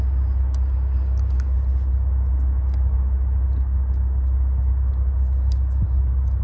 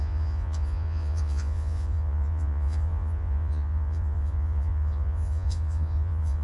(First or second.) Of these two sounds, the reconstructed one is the second